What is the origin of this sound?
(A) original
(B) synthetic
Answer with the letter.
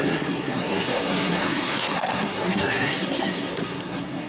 B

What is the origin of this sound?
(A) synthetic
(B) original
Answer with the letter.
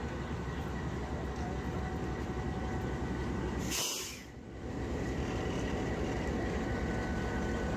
B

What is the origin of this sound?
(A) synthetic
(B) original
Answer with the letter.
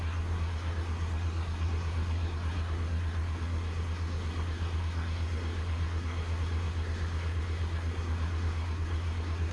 A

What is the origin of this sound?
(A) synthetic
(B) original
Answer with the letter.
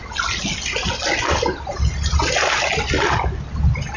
B